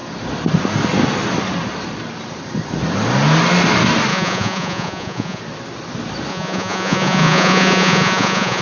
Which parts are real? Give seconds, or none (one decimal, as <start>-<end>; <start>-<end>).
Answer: 0.0-4.1; 5.4-6.3